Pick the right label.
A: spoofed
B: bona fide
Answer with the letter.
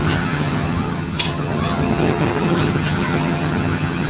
A